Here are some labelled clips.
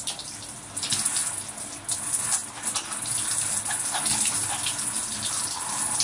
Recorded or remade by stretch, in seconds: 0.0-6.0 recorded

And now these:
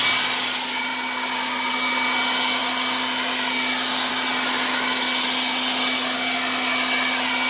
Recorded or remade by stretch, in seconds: 0.0-7.5 recorded

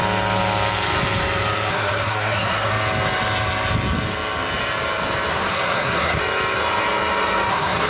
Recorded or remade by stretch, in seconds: 0.0-1.7 recorded; 1.7-2.7 remade; 2.7-5.3 recorded; 5.3-6.2 remade; 6.2-7.5 recorded; 7.5-7.9 remade

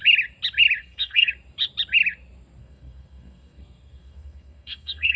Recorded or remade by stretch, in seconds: 0.0-0.8 recorded; 0.8-1.3 remade; 1.3-2.6 recorded; 2.6-5.2 remade

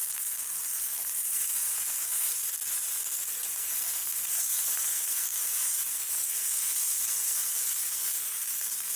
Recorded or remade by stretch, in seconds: 0.0-2.4 remade; 2.4-3.0 recorded; 3.0-9.0 remade

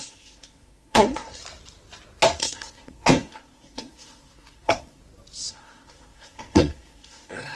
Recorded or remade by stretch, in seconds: 0.0-1.4 remade; 1.4-2.4 recorded; 2.4-5.0 remade; 5.0-5.5 recorded; 5.5-7.6 remade

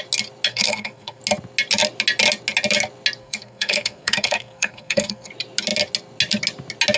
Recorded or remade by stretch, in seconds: 0.0-0.5 recorded; 0.5-1.2 remade; 1.2-3.2 recorded; 3.2-5.3 remade; 5.3-7.0 recorded

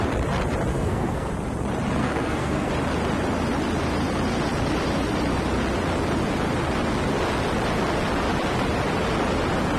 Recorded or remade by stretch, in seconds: 0.0-0.7 recorded; 0.7-1.3 remade; 1.3-2.0 recorded; 2.0-2.7 remade; 2.7-9.8 recorded